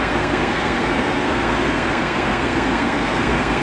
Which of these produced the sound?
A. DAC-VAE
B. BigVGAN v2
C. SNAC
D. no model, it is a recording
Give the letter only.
C